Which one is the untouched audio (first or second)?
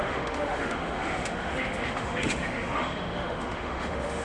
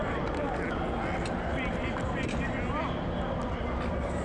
second